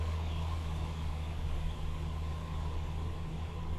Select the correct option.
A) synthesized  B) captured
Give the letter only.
A